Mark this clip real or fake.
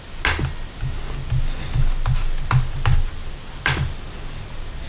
real